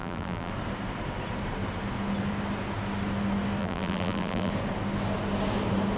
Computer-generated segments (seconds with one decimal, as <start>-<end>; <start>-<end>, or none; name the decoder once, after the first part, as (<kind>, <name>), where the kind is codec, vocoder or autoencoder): 0.0-0.5 (vocoder, BigVGAN v2); 3.6-4.5